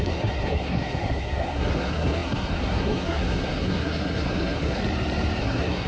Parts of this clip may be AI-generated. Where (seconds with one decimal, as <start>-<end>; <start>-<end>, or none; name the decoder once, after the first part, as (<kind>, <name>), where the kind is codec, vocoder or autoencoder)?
0.0-4.8 (codec, SNAC); 5.4-5.9